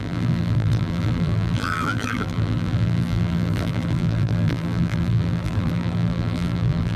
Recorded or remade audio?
remade